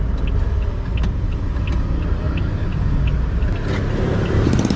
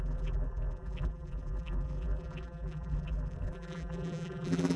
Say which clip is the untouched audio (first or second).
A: first